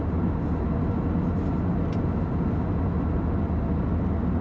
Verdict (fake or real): real